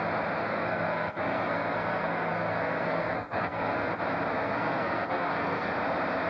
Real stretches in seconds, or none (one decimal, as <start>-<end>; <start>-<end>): 0.0-0.4; 3.9-4.3; 5.7-6.3